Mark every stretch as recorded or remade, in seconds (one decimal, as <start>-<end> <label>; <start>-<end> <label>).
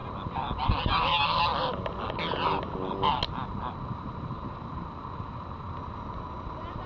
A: 0.0-6.9 recorded